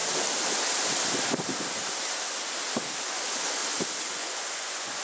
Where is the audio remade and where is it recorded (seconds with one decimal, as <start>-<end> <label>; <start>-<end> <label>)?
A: 0.0-3.0 recorded; 3.0-3.6 remade; 3.6-4.1 recorded; 4.1-5.0 remade